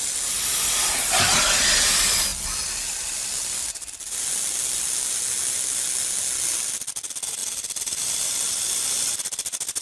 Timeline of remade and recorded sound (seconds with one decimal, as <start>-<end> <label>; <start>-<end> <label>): 0.0-2.3 recorded; 2.3-5.2 remade; 5.2-7.4 recorded; 7.4-8.5 remade; 8.5-9.8 recorded